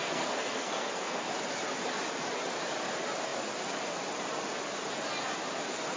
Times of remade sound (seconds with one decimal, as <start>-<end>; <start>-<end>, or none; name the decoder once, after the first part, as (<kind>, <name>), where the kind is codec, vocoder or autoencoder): 0.0-1.3 (codec, SNAC)

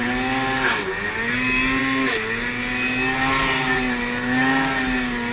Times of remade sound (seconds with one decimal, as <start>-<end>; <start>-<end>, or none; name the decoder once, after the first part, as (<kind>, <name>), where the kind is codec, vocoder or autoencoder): none

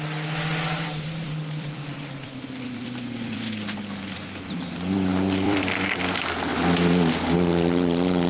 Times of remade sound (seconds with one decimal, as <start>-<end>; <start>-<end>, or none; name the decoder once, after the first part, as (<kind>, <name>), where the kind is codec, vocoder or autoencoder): 1.2-4.2 (vocoder, BigVGAN v2); 5.1-5.9

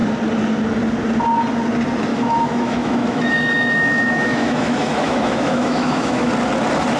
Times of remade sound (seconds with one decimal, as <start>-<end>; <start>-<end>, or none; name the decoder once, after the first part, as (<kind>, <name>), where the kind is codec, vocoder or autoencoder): 2.1-6.3 (autoencoder, DAC-VAE)

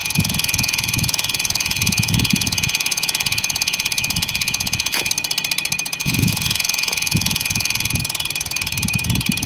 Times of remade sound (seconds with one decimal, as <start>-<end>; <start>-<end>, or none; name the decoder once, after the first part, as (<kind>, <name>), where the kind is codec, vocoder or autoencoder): 0.0-5.1 (vocoder, Vocos); 6.0-8.0

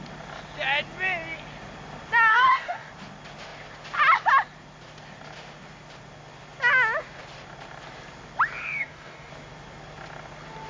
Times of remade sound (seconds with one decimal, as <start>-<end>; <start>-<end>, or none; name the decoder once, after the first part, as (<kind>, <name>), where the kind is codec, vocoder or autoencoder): 2.3-2.9 (codec, DAC); 8.6-9.3